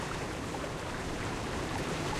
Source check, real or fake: fake